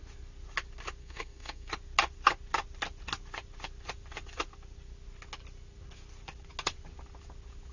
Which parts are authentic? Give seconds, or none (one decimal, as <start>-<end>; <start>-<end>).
0.0-1.0; 1.7-7.7